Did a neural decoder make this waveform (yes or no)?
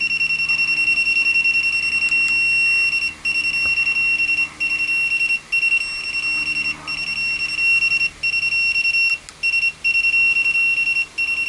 no